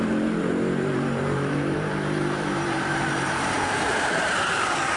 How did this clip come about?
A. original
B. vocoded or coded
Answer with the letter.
B